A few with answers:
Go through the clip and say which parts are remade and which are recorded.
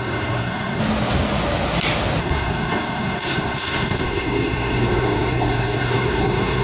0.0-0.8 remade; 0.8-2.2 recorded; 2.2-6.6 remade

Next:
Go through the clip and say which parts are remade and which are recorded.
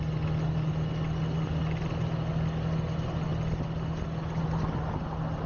0.0-5.5 recorded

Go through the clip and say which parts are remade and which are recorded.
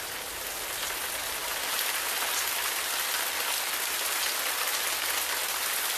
0.0-6.0 recorded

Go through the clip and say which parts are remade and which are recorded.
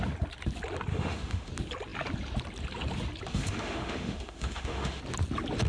0.0-0.9 recorded; 0.9-1.5 remade; 1.5-3.3 recorded; 3.3-5.0 remade; 5.0-5.7 recorded